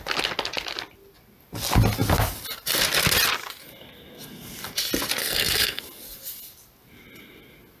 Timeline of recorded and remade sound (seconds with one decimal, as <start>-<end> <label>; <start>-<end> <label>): 0.0-5.2 recorded; 5.2-5.8 remade; 5.8-7.8 recorded